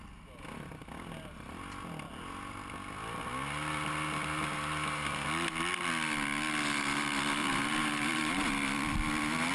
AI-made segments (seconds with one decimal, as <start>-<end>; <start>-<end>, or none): 7.4-8.5